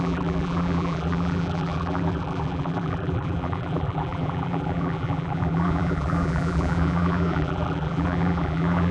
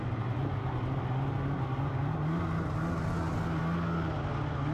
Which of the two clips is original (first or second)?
second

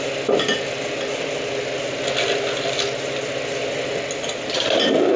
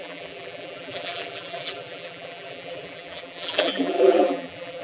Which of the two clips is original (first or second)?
first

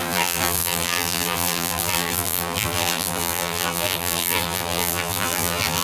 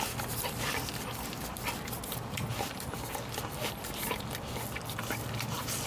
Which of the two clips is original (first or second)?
second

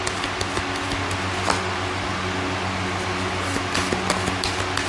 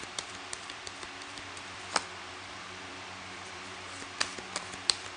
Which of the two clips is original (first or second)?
first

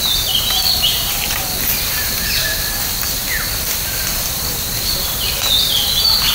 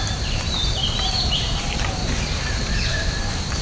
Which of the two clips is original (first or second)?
first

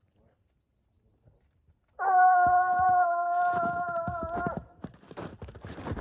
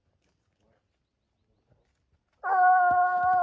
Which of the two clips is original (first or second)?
second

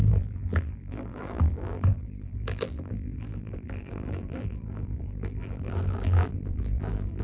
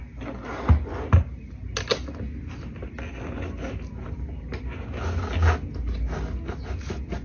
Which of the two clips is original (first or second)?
second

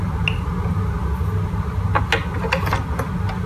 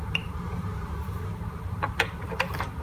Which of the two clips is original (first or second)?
first